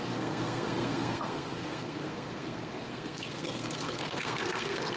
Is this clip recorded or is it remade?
remade